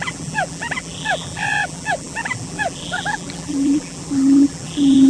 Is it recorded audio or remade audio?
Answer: remade